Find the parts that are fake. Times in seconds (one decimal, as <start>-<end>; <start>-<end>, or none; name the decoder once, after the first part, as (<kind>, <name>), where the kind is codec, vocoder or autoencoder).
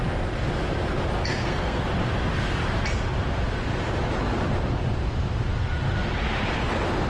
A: 1.3-1.8 (codec, SNAC)